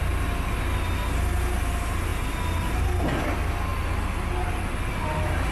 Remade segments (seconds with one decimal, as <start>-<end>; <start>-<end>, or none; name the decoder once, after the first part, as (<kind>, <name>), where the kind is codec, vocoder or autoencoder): none